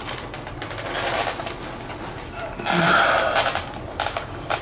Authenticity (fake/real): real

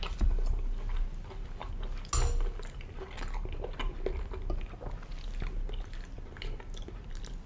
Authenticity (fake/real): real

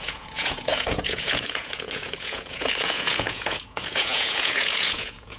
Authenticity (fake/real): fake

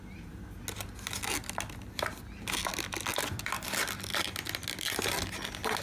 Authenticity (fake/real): real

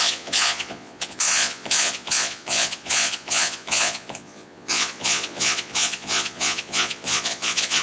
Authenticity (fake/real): fake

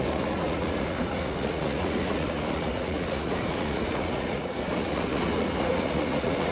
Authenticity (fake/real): fake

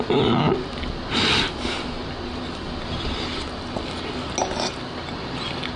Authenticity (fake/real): real